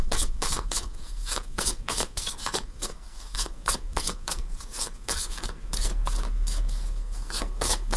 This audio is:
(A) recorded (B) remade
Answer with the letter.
B